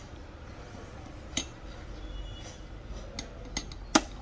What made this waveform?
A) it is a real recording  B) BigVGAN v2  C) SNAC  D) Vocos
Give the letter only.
A